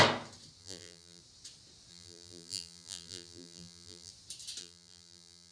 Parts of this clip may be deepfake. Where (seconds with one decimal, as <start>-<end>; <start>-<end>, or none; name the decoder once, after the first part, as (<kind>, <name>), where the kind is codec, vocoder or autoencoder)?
0.6-1.2 (vocoder, BigVGAN v2); 1.9-4.1; 4.6-5.5